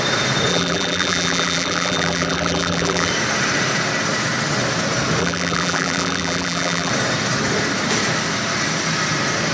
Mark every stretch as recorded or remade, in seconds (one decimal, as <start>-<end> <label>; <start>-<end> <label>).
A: 0.0-0.5 recorded; 0.5-3.1 remade; 3.1-5.2 recorded; 5.2-6.9 remade; 6.9-9.5 recorded